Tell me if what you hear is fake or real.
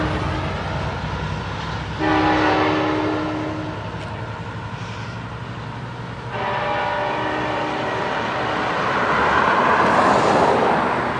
real